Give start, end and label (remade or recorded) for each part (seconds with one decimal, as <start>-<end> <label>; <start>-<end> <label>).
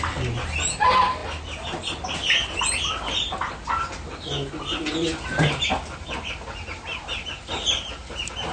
0.0-8.5 recorded